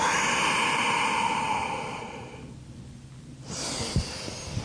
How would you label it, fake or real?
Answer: real